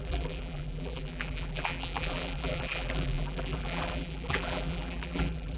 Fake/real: fake